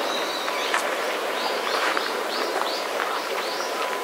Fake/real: fake